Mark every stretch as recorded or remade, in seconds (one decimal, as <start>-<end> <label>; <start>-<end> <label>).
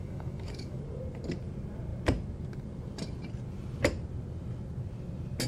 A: 0.0-0.8 remade; 0.8-5.5 recorded